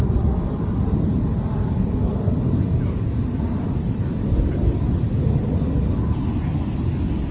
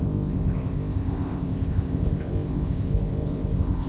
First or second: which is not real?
second